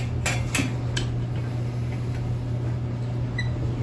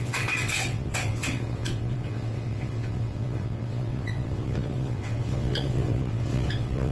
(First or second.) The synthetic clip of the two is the second